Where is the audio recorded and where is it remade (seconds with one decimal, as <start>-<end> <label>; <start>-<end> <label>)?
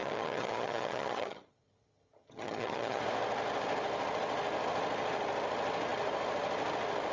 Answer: 0.0-3.0 remade; 3.0-7.1 recorded